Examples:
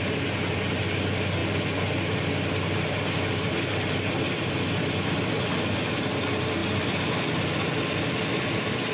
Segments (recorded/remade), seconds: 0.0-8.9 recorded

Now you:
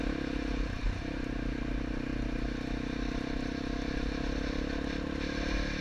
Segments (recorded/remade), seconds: 0.0-5.8 recorded

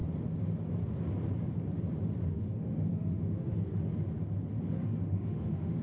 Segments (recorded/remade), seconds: 0.0-2.3 recorded; 2.3-3.9 remade; 3.9-4.7 recorded; 4.7-5.8 remade

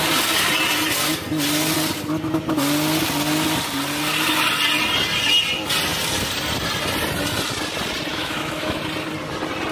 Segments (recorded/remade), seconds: 0.0-8.1 recorded; 8.1-8.8 remade; 8.8-9.7 recorded